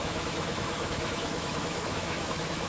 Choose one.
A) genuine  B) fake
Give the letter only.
B